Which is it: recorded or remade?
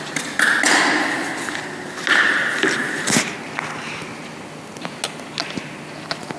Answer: recorded